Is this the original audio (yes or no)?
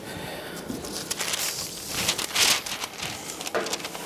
yes